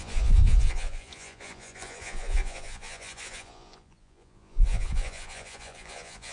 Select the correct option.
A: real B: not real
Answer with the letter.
B